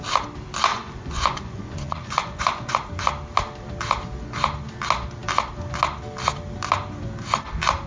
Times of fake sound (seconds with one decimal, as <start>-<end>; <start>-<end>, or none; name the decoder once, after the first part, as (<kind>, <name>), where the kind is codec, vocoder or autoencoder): 0.7-2.7 (vocoder, Vocos)